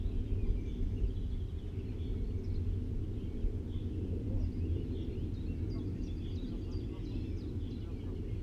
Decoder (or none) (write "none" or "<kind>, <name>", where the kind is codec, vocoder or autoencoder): none